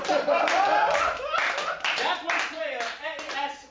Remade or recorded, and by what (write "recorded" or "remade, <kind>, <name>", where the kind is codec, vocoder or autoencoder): remade, vocoder, BigVGAN v2